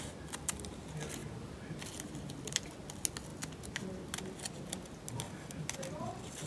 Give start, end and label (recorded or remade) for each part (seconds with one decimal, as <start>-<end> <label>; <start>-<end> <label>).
0.0-1.2 recorded; 1.2-2.7 remade; 2.7-6.5 recorded